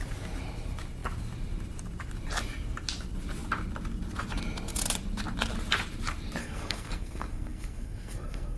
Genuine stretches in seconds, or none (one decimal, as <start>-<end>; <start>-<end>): 0.0-6.4